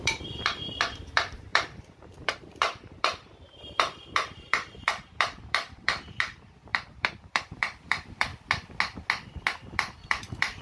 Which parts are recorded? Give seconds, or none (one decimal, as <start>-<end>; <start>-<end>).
8.3-9.7